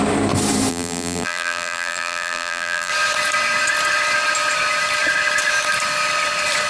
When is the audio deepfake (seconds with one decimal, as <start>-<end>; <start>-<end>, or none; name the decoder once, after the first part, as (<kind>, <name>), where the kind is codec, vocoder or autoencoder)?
0.7-2.9 (vocoder, BigVGAN v2)